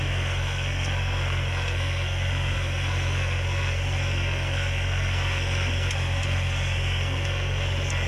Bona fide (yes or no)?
no